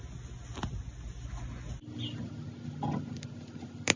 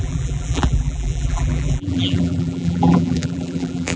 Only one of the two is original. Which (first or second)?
first